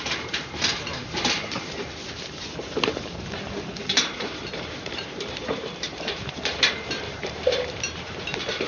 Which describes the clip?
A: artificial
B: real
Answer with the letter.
A